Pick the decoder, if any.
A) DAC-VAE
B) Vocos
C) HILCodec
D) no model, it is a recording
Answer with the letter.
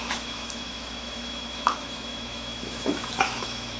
A